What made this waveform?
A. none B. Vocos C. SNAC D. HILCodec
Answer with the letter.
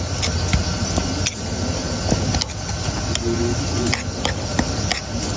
A